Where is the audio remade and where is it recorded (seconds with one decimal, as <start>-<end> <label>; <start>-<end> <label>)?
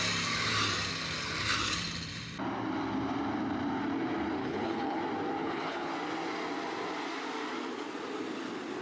0.0-4.4 recorded; 4.4-5.0 remade; 5.0-5.4 recorded; 5.4-5.9 remade; 5.9-8.8 recorded